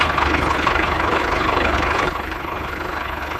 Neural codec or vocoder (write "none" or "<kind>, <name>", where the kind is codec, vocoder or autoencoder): codec, HILCodec